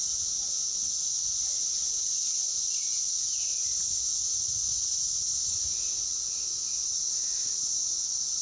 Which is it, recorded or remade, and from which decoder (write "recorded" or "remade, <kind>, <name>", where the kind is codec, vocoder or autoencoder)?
recorded